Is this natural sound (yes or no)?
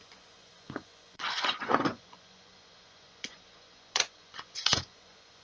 no